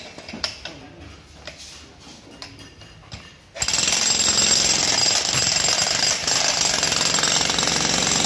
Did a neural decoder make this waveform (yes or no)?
no